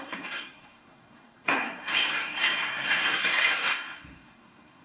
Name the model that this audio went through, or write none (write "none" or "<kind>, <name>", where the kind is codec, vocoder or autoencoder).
codec, SNAC